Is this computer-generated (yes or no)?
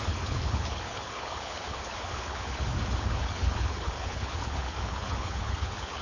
yes